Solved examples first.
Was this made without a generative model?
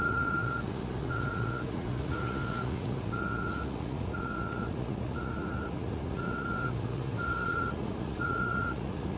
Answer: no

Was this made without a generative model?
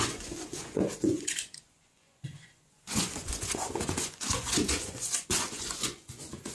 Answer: no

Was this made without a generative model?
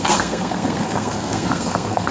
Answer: no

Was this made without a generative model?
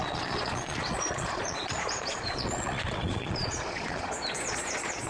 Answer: no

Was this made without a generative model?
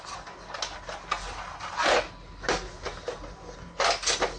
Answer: yes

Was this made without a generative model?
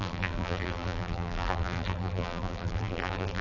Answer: no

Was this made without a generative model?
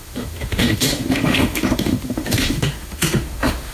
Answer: no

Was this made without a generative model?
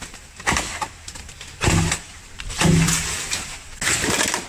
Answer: yes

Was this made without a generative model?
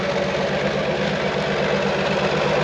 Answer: yes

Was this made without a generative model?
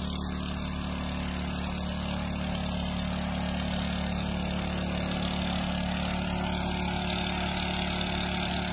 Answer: yes